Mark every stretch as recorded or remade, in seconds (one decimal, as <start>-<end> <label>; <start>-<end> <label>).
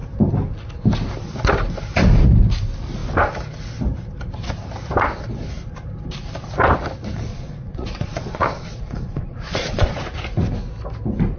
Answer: 0.0-7.3 recorded; 7.3-10.0 remade; 10.0-11.4 recorded